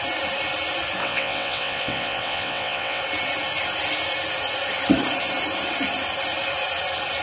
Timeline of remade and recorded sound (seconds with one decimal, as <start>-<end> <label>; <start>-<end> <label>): 0.0-1.0 recorded; 1.0-3.0 remade; 3.0-7.2 recorded